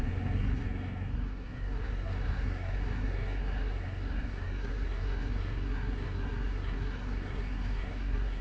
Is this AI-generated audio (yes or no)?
yes